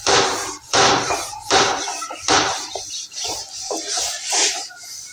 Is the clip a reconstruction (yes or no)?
yes